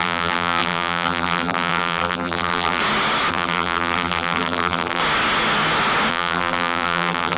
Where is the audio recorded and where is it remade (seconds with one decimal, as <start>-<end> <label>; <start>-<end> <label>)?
0.0-2.8 remade; 2.8-3.3 recorded; 3.3-5.0 remade; 5.0-6.1 recorded; 6.1-7.4 remade